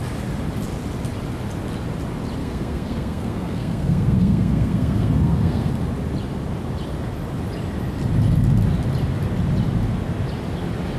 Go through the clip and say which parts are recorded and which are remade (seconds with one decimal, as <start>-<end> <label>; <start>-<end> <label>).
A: 0.0-2.4 recorded; 2.4-5.7 remade; 5.7-11.0 recorded